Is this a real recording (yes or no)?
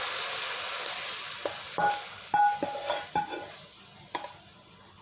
yes